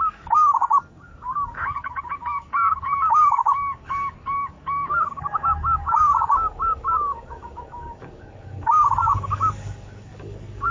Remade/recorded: remade